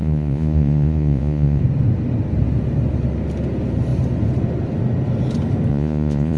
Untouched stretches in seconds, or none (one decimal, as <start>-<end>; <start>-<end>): 1.6-5.7